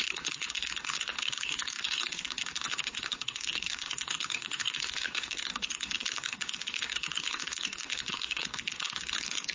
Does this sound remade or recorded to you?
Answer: remade